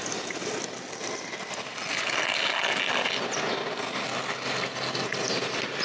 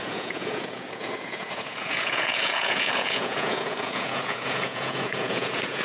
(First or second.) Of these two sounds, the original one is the first